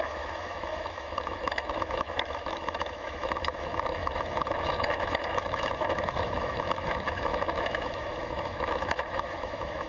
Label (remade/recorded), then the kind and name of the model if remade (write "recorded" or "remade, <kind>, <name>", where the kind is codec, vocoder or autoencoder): remade, autoencoder, DAC-VAE